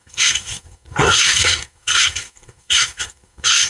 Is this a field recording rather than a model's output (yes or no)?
no